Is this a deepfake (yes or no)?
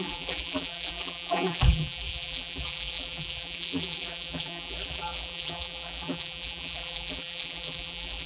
yes